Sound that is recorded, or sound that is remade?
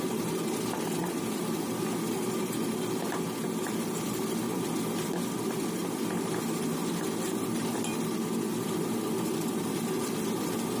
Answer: recorded